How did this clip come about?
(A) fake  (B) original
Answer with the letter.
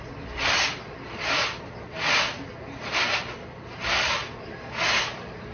B